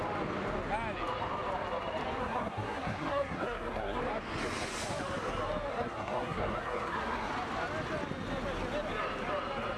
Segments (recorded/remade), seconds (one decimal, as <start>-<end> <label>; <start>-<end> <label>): 0.0-2.2 recorded; 2.2-4.0 remade; 4.0-5.7 recorded; 5.7-7.3 remade; 7.3-9.8 recorded